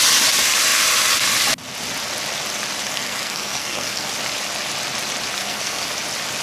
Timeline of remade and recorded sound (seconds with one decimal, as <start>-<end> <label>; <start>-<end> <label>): 0.0-2.9 recorded; 2.9-4.1 remade; 4.1-5.4 recorded; 5.4-5.9 remade; 5.9-6.4 recorded